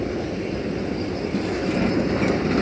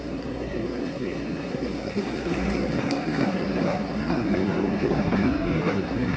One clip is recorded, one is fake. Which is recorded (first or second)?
first